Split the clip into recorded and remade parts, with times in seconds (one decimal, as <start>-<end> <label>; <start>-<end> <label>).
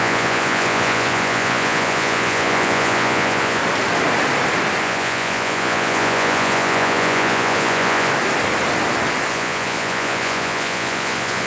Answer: 0.0-3.6 remade; 3.6-4.8 recorded; 4.8-8.1 remade; 8.1-9.3 recorded; 9.3-11.5 remade